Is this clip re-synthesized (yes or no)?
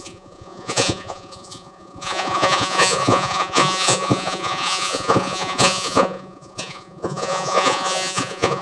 yes